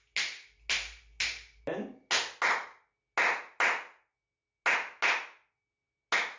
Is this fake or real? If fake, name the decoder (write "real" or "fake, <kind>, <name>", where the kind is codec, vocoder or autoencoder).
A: real